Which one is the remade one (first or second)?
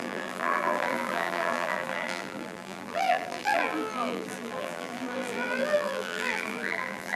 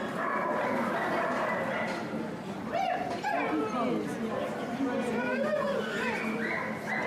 first